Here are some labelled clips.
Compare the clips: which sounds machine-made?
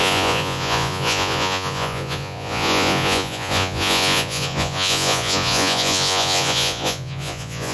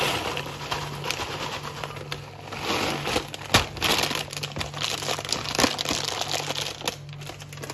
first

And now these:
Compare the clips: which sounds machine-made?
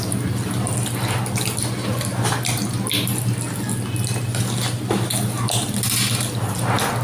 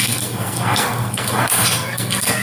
second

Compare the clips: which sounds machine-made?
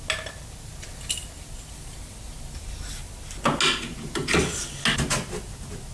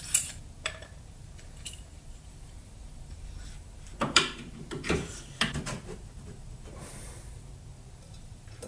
second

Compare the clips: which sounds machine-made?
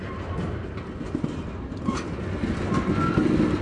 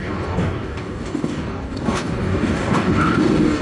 second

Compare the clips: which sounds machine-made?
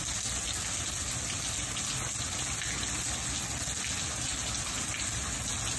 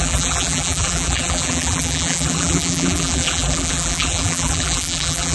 second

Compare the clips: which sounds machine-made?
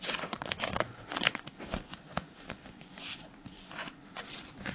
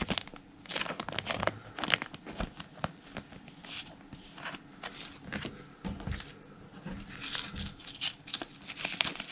first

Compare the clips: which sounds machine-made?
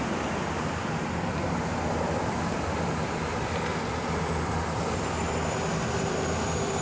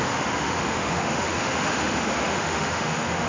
second